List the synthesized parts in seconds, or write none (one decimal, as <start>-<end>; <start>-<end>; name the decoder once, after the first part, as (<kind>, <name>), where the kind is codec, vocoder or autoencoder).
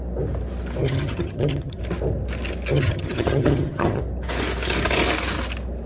0.8-1.8 (vocoder, HiFi-GAN); 2.7-4.0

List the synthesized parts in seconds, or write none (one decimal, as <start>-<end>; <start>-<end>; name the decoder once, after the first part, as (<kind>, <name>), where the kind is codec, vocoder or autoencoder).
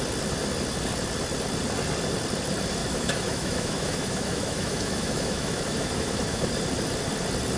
2.8-6.5 (autoencoder, DAC-VAE)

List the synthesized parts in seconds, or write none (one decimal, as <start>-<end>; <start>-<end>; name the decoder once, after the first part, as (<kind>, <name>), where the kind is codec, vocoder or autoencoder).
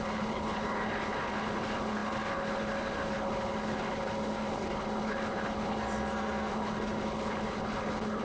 0.0-5.8 (codec, HILCodec); 6.5-8.2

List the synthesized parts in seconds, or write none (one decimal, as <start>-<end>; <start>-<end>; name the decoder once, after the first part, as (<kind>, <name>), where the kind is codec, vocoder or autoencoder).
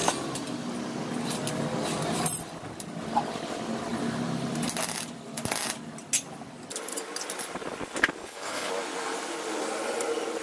8.2-8.7 (codec, HILCodec)